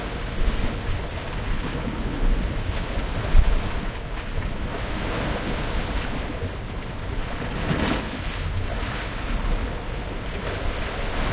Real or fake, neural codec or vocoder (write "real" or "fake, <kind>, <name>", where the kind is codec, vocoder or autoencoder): real